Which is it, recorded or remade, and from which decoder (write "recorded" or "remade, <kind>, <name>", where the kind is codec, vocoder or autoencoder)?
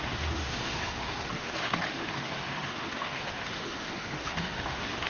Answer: remade, autoencoder, DAC-VAE